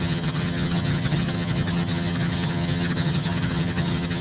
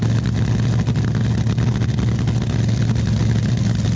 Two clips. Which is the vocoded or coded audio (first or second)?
first